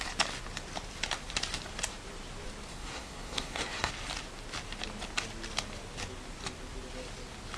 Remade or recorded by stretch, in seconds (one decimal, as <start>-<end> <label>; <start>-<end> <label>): 0.0-2.7 recorded; 2.7-3.9 remade; 3.9-7.6 recorded